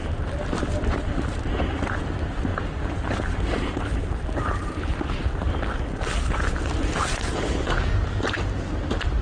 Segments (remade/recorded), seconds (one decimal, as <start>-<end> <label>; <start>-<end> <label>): 0.0-2.0 remade; 2.0-2.5 recorded; 2.5-5.1 remade; 5.1-9.2 recorded